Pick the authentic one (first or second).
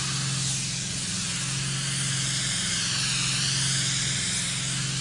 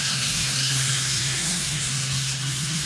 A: first